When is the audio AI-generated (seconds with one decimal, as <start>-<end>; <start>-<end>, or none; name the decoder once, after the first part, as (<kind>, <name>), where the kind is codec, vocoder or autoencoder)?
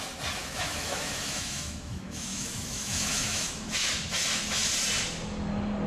0.4-3.9 (autoencoder, DAC-VAE)